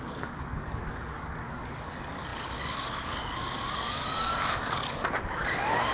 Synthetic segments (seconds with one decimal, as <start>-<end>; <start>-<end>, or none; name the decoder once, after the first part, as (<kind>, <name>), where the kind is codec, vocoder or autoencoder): 0.0-5.9 (codec, DAC)